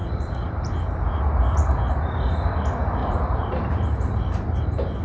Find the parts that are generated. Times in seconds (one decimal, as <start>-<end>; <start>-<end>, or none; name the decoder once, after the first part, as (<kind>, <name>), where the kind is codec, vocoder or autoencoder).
0.0-1.2 (vocoder, BigVGAN v2); 3.0-4.6